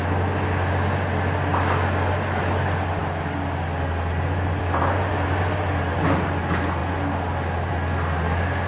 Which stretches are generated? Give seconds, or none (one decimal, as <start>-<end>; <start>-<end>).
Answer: none